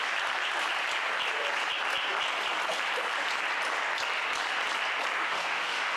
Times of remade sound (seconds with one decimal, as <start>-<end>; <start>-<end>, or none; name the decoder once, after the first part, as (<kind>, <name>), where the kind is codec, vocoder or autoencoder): 5.2-6.0 (autoencoder, DAC-VAE)